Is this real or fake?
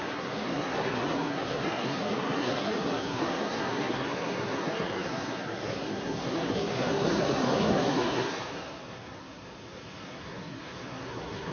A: fake